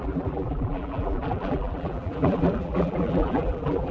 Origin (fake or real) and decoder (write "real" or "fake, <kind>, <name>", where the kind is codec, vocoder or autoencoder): fake, vocoder, BigVGAN v2